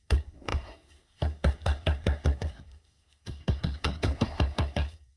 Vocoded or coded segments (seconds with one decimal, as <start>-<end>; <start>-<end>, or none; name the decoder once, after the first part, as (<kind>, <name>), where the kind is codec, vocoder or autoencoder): 0.0-5.2 (codec, SNAC)